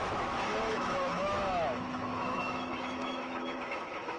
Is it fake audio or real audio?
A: fake